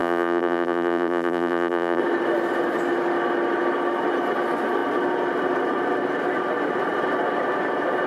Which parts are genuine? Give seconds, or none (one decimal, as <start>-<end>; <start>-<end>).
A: 2.0-8.1